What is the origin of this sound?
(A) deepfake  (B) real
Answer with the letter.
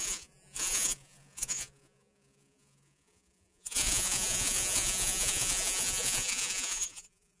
A